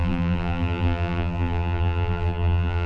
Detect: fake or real fake